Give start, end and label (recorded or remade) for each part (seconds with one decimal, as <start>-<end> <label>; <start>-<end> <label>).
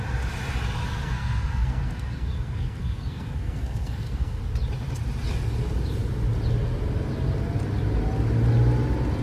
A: 0.0-0.8 recorded; 0.8-4.4 remade; 4.4-9.2 recorded